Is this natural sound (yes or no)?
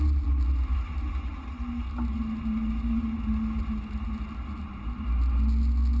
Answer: yes